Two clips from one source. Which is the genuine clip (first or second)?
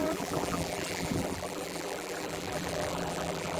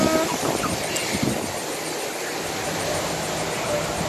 second